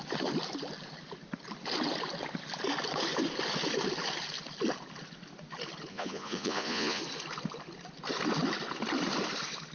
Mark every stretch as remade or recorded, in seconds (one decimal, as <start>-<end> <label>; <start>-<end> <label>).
0.0-5.9 recorded; 5.9-7.0 remade; 7.0-9.7 recorded